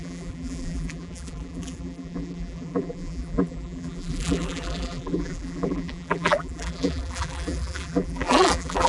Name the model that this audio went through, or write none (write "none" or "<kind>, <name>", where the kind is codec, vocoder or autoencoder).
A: vocoder, BigVGAN v2